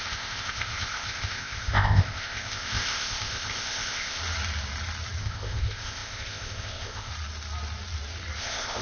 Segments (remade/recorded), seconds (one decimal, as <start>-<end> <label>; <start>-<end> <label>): 0.0-4.2 remade; 4.2-5.2 recorded; 5.2-7.1 remade; 7.1-8.4 recorded; 8.4-8.8 remade